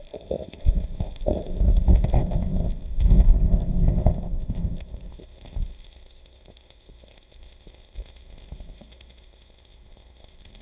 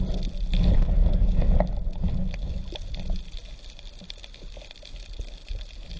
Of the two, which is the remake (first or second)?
first